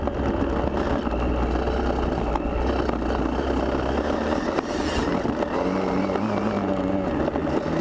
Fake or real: real